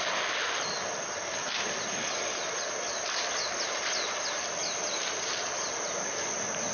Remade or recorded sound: recorded